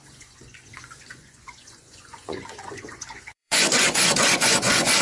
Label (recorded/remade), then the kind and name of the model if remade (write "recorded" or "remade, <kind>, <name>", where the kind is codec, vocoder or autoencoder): remade, vocoder, Vocos